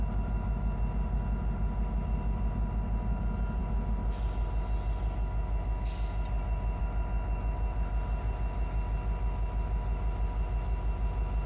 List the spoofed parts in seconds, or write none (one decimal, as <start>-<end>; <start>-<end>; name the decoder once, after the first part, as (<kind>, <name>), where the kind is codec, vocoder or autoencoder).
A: none